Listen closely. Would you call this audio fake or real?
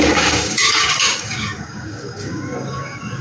fake